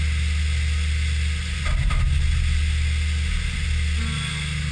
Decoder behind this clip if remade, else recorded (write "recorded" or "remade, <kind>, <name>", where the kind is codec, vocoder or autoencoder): recorded